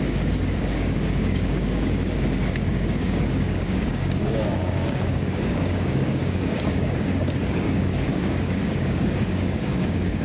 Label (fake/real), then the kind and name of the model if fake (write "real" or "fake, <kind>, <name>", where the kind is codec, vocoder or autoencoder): fake, codec, DAC